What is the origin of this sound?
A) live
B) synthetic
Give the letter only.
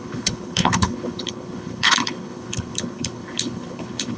B